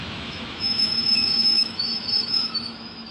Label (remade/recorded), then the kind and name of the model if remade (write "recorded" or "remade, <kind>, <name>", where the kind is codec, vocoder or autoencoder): remade, autoencoder, DAC-VAE